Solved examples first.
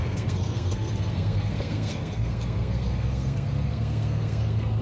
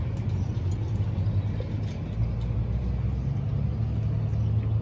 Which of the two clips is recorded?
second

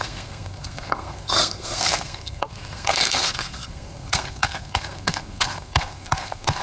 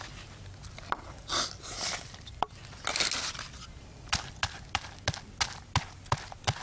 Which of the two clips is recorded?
second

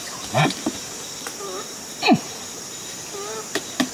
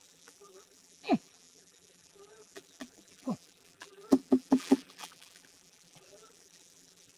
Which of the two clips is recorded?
first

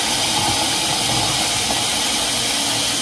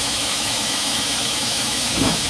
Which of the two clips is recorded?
first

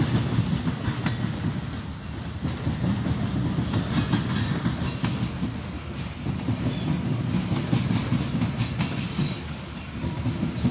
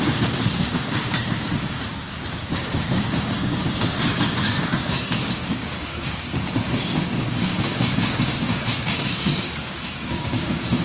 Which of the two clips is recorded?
first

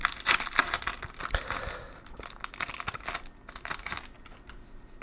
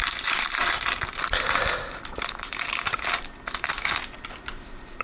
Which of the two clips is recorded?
first